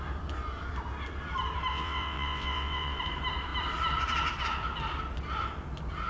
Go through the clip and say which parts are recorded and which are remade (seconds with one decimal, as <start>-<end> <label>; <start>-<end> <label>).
0.0-1.7 recorded; 1.7-3.0 remade; 3.0-6.1 recorded